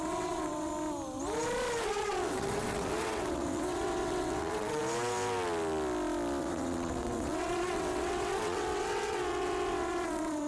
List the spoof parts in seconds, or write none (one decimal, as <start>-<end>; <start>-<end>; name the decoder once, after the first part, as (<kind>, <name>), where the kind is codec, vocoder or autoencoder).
0.0-0.7 (vocoder, WaveNeXt); 1.8-4.8; 6.4-10.5